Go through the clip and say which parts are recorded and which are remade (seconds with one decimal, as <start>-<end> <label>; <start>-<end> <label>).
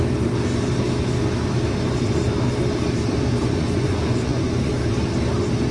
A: 0.0-3.4 recorded; 3.4-4.7 remade; 4.7-5.7 recorded